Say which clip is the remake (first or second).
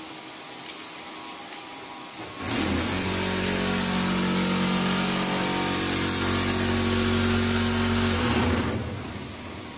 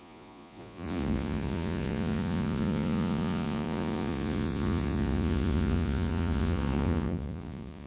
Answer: second